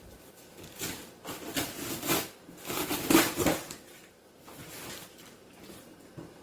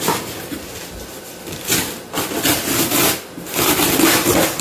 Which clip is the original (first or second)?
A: second